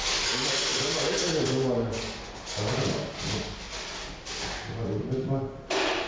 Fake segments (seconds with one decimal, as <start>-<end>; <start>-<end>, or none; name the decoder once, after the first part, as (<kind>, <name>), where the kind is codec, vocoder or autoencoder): none

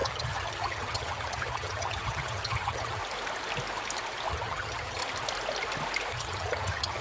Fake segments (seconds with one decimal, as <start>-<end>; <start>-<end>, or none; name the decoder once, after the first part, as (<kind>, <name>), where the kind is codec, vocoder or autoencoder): 0.0-3.0 (vocoder, HiFi-GAN); 4.3-5.0; 6.1-7.0

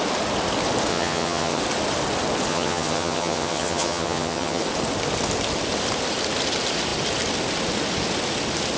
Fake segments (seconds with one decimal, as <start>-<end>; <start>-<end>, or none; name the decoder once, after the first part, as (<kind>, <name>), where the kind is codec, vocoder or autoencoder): 0.9-1.6 (vocoder, HiFi-GAN); 2.5-4.6

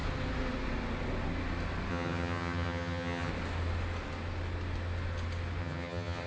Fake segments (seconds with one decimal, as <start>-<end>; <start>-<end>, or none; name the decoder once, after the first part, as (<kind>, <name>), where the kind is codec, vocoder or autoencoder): 1.9-3.3 (vocoder, HiFi-GAN); 5.6-6.3

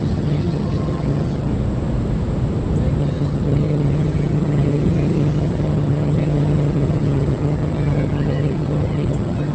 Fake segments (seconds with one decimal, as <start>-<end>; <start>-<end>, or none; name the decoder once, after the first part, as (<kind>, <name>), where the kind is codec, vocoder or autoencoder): 0.0-1.5 (vocoder, HiFi-GAN); 3.0-9.5

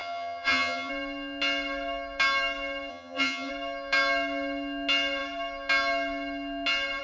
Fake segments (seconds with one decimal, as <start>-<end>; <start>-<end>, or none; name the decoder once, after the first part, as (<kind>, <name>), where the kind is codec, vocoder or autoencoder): 0.0-0.9 (vocoder, HiFi-GAN); 2.9-3.5